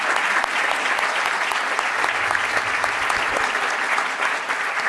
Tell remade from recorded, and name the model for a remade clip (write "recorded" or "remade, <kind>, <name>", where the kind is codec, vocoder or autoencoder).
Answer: recorded